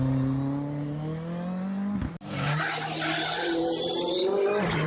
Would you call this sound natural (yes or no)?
yes